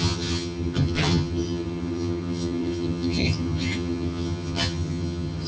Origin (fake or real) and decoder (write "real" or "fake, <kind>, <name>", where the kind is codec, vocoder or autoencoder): fake, vocoder, HiFi-GAN